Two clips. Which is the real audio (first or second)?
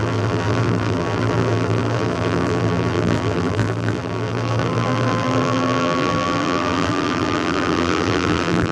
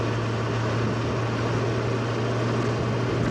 second